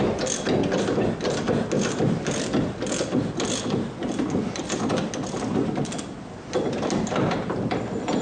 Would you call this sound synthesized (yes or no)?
no